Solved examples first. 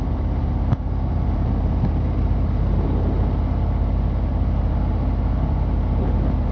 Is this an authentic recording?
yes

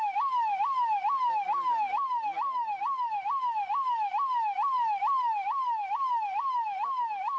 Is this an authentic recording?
yes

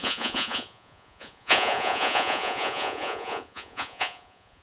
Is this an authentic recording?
no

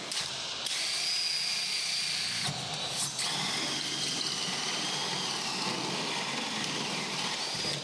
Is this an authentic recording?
yes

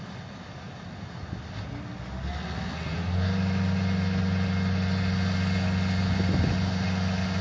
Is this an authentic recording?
yes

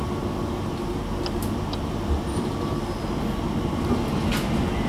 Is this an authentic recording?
yes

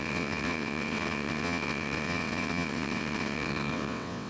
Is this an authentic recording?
no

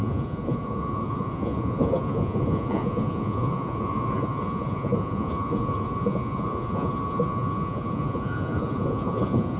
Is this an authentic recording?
no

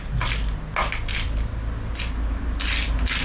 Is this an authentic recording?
yes